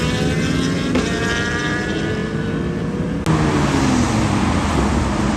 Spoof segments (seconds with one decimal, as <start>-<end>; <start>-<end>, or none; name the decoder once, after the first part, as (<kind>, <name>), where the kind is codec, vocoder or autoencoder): none